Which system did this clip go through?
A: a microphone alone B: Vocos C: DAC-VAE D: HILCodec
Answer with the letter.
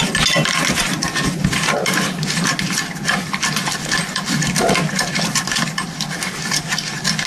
A